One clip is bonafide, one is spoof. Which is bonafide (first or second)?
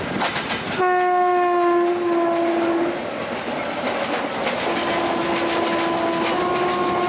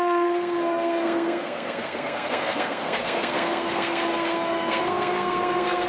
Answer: first